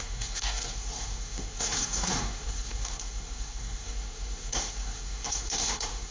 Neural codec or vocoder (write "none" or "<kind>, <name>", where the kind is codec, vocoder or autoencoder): codec, SNAC